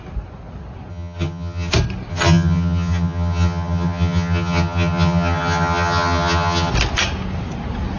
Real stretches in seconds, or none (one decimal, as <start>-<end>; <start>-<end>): 0.0-0.9; 1.7-2.1; 6.7-8.0